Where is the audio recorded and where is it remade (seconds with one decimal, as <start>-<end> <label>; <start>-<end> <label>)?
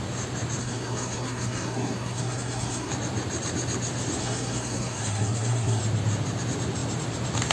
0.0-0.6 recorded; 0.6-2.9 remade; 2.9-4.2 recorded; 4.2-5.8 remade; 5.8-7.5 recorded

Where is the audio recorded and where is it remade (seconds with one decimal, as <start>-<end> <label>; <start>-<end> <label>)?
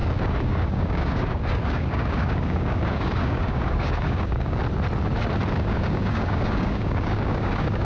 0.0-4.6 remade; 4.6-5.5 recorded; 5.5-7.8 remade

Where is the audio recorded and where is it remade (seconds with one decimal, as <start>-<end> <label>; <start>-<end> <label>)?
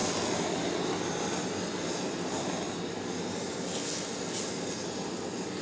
0.0-5.6 recorded